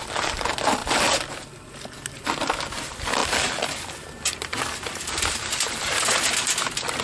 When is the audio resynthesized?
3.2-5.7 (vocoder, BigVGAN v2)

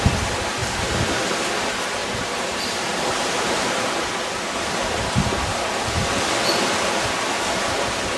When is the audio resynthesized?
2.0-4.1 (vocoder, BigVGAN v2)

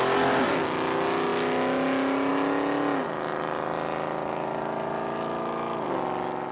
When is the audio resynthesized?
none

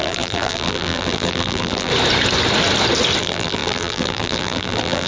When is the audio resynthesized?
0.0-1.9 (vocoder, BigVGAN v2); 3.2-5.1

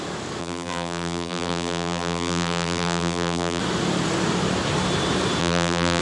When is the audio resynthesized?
0.4-3.6 (vocoder, BigVGAN v2); 5.4-6.0